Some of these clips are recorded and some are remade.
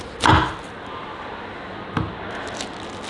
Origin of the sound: recorded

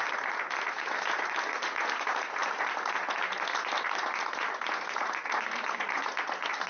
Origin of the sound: recorded